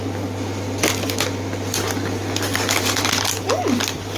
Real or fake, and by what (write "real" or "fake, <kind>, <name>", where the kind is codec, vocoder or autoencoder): real